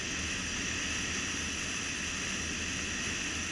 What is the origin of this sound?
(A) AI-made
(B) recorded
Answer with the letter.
B